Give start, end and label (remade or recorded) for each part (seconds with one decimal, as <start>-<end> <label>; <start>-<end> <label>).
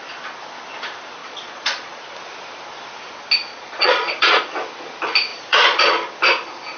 0.0-1.2 recorded; 1.2-2.0 remade; 2.0-3.5 recorded; 3.5-4.4 remade; 4.4-5.3 recorded; 5.3-6.1 remade; 6.1-6.8 recorded